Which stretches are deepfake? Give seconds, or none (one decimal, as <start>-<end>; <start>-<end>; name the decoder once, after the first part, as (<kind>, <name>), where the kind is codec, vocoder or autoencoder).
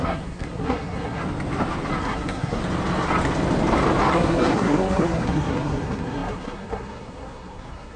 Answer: 0.0-1.2 (codec, SNAC); 2.0-2.6; 4.1-8.0